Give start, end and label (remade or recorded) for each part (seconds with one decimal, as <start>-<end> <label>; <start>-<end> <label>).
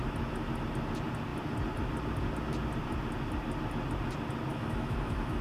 0.0-4.5 recorded; 4.5-5.4 remade